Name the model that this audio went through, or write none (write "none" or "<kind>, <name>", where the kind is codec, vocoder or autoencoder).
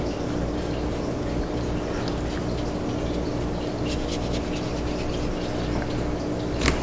none